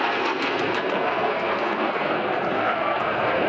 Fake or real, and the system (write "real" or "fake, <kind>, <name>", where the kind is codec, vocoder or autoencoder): fake, codec, SNAC